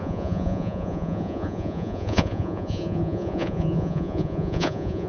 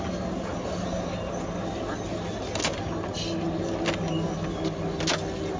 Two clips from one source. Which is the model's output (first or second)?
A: first